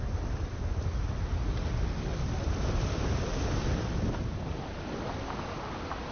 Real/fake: real